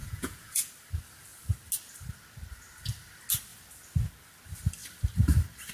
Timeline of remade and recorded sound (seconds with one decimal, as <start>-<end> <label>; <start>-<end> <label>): 0.0-0.7 remade; 0.7-5.7 recorded